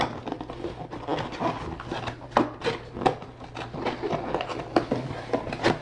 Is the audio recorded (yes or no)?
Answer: yes